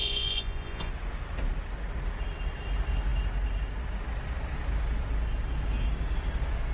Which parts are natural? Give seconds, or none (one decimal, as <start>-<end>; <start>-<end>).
0.9-6.7